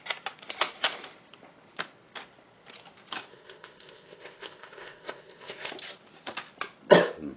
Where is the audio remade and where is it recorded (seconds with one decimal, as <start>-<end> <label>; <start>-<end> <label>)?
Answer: 0.0-3.3 recorded; 3.3-5.7 remade; 5.7-7.4 recorded